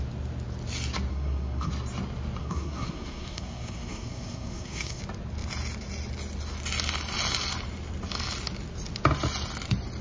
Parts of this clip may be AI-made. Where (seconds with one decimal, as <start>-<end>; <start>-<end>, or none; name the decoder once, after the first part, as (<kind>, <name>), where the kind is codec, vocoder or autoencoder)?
1.1-1.7 (codec, SNAC); 2.4-5.0